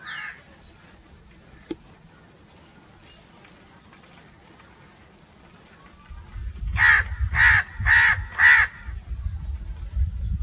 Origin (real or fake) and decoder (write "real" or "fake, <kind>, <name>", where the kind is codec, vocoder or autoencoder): real